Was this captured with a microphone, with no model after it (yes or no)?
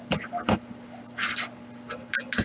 yes